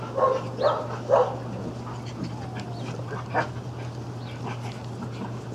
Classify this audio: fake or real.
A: real